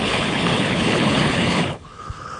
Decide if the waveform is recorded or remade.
remade